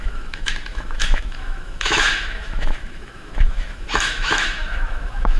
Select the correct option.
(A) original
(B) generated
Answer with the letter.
B